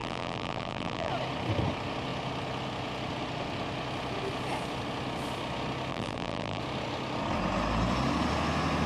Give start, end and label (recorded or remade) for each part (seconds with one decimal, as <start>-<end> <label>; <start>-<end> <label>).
0.0-1.1 remade; 1.1-5.9 recorded; 5.9-6.6 remade; 6.6-8.9 recorded